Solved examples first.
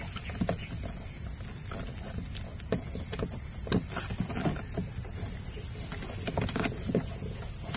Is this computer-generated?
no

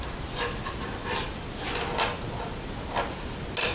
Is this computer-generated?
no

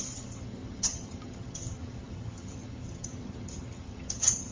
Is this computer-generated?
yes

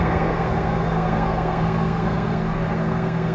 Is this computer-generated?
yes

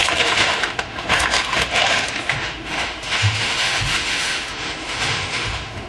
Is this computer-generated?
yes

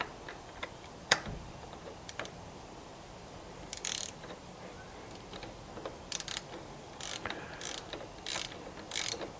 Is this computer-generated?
yes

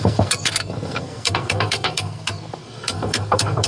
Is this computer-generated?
yes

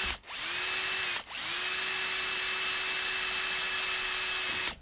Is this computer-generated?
no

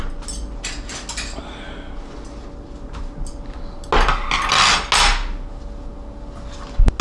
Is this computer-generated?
no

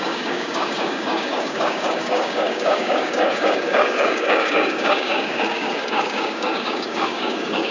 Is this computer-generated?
yes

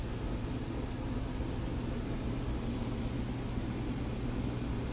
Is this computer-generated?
no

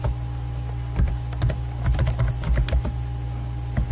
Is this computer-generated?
no